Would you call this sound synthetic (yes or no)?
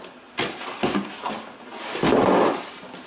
no